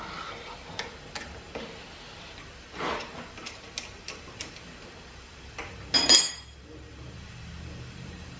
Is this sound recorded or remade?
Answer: recorded